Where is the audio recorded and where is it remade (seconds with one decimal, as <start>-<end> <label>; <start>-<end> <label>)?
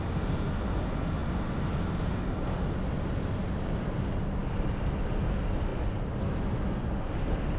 0.0-7.6 recorded